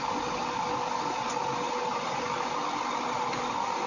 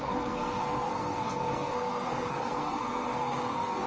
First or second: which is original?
first